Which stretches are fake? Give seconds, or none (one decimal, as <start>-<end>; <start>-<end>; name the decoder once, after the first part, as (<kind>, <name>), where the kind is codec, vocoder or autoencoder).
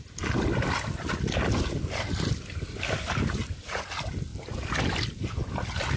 none